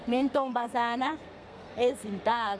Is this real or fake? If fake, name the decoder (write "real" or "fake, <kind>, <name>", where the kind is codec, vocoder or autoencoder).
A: fake, codec, SNAC